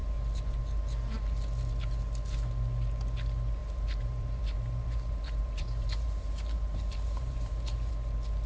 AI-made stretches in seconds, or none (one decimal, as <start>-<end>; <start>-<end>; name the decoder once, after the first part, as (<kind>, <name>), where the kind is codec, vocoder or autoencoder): 3.6-7.9 (vocoder, BigVGAN v2)